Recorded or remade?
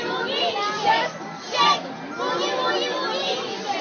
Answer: recorded